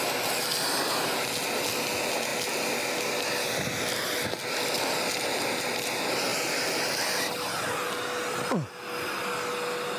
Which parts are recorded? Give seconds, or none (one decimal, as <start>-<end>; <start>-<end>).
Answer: 0.0-10.0